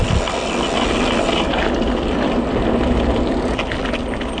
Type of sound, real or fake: real